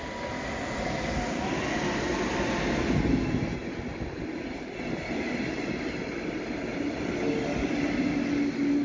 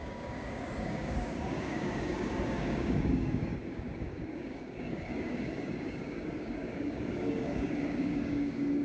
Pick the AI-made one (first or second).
second